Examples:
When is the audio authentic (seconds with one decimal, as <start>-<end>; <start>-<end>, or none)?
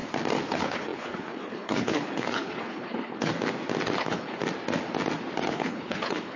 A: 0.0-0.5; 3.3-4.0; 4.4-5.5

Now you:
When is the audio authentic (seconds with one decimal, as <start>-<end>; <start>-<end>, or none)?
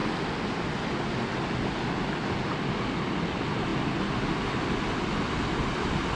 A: 0.0-6.2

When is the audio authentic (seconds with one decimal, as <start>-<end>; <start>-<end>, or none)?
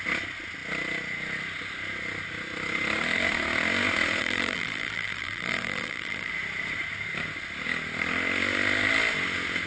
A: 0.0-4.2; 6.3-9.7